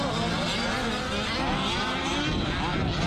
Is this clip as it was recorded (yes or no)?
yes